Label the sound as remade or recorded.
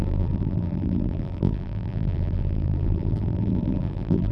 remade